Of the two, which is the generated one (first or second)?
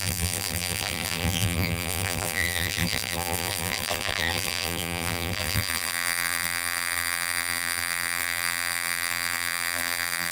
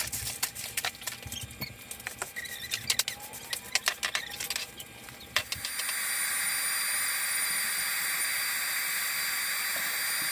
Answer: first